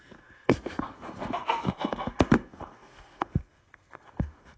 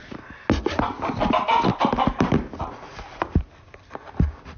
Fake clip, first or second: first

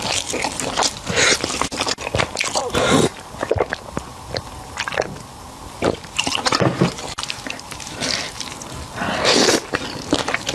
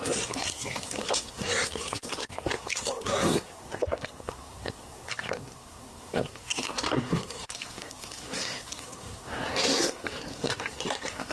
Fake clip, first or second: second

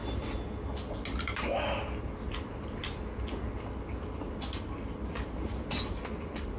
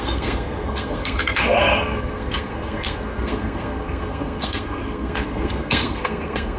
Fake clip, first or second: second